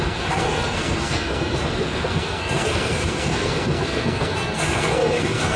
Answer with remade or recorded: remade